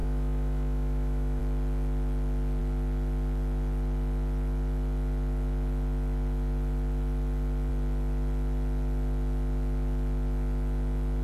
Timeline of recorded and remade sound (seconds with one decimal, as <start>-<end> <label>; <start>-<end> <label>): 0.0-1.4 remade; 1.4-11.2 recorded